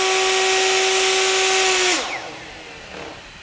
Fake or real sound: real